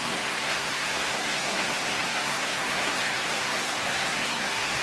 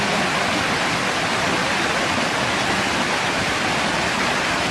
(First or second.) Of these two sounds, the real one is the second